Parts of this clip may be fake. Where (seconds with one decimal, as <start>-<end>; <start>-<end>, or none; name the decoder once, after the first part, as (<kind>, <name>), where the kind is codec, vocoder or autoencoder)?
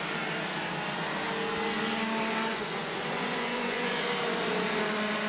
2.5-4.0 (vocoder, Vocos)